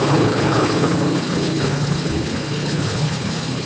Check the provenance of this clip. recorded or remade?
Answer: remade